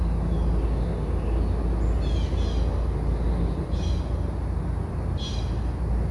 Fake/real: real